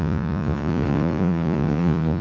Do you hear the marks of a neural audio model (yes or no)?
yes